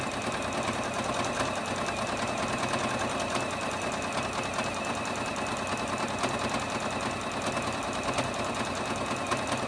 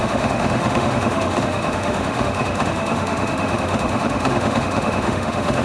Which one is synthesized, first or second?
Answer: second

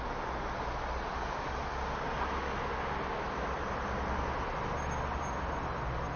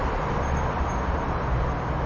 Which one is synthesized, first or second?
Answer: second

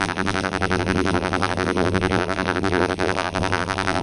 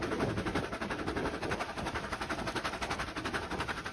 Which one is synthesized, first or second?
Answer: first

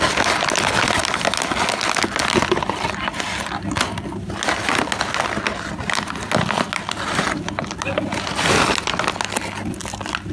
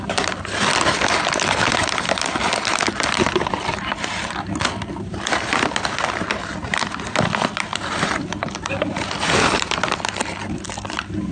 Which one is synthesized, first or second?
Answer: second